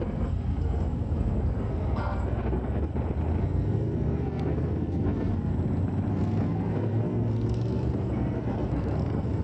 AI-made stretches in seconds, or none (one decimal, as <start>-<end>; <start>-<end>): 0.0-2.9; 3.4-5.5; 6.1-9.4